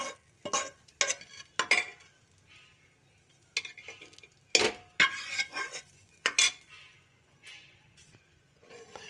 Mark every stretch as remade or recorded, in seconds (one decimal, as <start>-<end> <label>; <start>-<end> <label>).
0.0-5.0 recorded; 5.0-9.1 remade